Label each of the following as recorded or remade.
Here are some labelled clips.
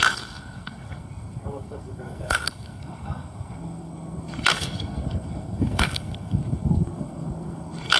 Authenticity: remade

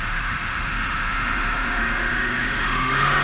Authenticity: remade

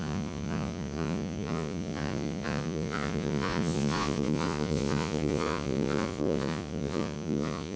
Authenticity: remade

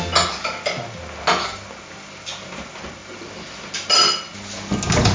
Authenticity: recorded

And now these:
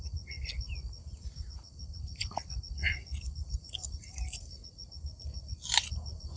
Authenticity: recorded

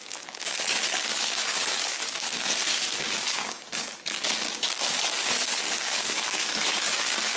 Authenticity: remade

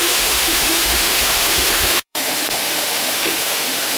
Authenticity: remade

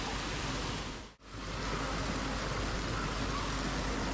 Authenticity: recorded